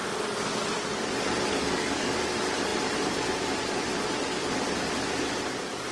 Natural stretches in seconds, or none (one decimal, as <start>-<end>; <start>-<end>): 0.0-1.6; 2.2-5.9